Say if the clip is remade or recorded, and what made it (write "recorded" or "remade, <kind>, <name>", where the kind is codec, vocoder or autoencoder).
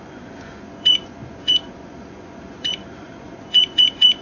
remade, vocoder, Vocos